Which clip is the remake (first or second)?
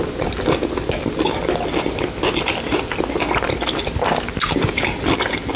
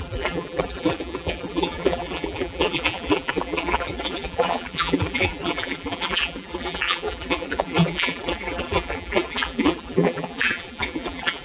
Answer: second